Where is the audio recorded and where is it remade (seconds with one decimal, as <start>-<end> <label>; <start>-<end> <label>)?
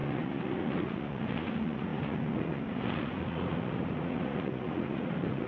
0.0-5.5 remade